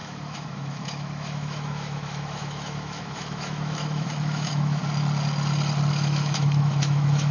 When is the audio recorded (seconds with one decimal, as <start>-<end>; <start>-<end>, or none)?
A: 4.8-5.9